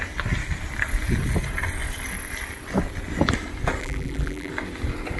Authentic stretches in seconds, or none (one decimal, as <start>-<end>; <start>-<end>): 0.0-3.8; 4.5-5.2